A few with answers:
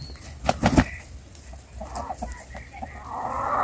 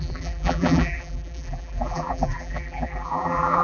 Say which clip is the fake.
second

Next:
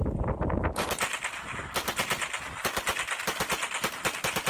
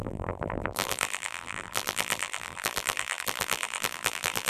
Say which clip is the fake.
second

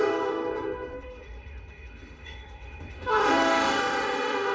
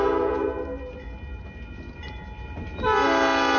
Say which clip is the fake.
first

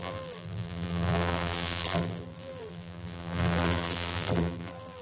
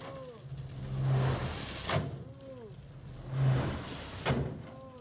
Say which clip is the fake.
first